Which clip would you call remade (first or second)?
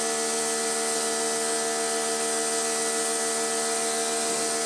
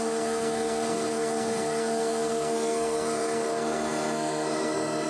second